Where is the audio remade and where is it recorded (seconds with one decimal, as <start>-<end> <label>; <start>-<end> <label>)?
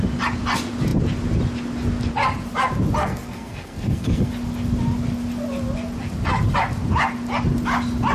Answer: 0.0-3.0 recorded; 3.0-4.3 remade; 4.3-8.1 recorded